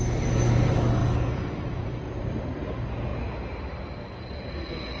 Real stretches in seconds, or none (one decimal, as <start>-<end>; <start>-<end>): 0.0-1.0; 2.6-5.0